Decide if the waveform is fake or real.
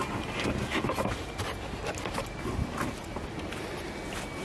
real